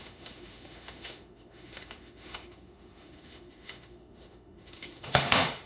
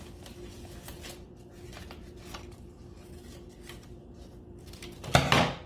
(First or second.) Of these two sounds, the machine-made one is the first